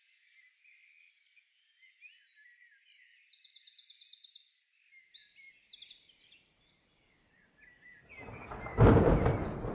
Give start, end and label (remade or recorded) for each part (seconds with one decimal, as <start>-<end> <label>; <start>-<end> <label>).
0.0-8.7 recorded; 8.7-9.7 remade